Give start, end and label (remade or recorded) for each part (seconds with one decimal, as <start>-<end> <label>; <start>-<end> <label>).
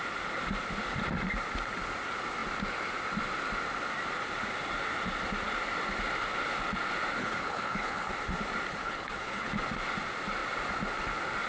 0.0-7.2 recorded; 7.2-8.1 remade; 8.1-8.8 recorded; 8.8-9.5 remade; 9.5-11.5 recorded